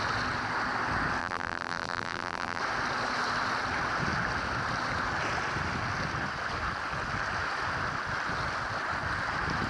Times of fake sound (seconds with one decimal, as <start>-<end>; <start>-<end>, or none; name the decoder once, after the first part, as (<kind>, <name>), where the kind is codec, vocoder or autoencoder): 1.2-2.6 (vocoder, BigVGAN v2)